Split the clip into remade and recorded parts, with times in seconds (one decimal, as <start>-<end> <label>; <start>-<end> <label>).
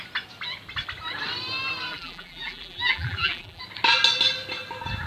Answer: 0.0-1.9 recorded; 1.9-3.6 remade; 3.6-5.1 recorded